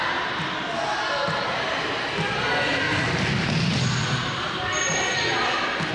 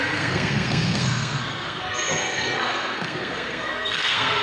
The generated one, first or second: second